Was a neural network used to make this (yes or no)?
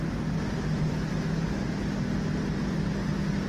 no